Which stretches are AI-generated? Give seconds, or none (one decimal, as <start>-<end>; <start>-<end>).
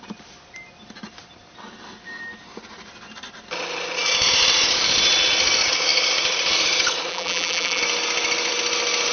7.1-7.8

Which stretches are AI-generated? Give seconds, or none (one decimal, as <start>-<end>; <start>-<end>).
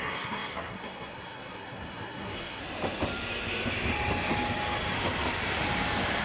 0.0-2.6